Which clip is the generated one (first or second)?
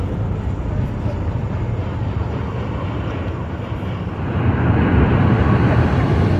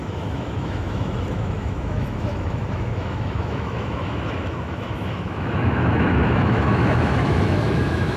second